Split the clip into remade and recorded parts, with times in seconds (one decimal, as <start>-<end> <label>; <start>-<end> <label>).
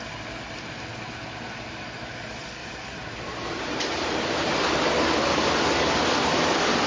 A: 0.0-0.9 recorded; 0.9-2.2 remade; 2.2-2.6 recorded; 2.6-4.9 remade; 4.9-6.9 recorded